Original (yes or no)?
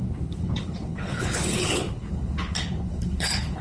no